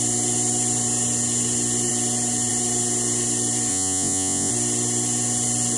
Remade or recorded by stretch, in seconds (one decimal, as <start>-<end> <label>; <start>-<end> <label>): 0.0-3.7 recorded; 3.7-4.5 remade; 4.5-5.8 recorded